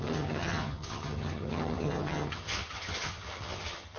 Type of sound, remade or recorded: remade